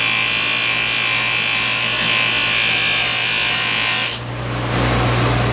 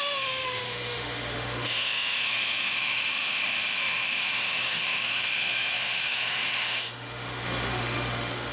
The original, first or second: first